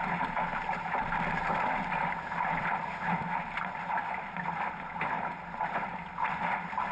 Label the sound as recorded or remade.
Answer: recorded